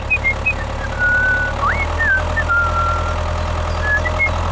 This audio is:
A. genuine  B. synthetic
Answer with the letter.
A